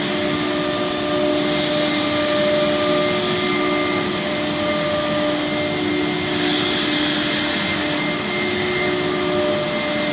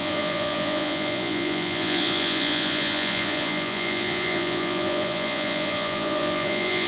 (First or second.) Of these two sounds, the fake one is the second